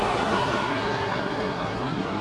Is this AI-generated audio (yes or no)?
yes